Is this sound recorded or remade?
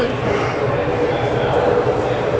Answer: remade